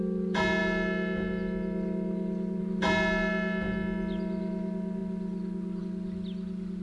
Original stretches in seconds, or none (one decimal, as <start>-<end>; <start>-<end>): 0.0-6.8